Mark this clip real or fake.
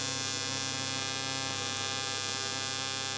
real